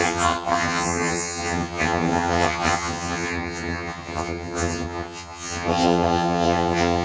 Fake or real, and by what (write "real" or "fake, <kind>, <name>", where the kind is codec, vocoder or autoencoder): fake, vocoder, HiFi-GAN